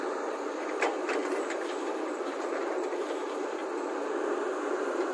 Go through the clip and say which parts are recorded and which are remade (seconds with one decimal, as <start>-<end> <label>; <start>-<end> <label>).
0.0-3.6 remade; 3.6-5.1 recorded